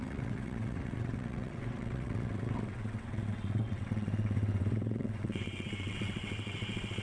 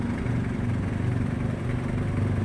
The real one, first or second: second